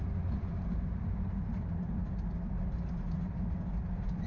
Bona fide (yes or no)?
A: yes